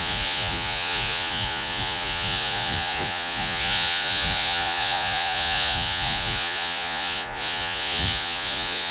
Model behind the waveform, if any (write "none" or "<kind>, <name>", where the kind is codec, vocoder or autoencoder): vocoder, Vocos